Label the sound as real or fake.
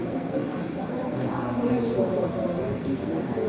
fake